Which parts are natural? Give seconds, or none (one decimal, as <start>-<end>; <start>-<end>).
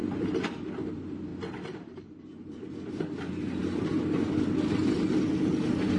0.7-6.0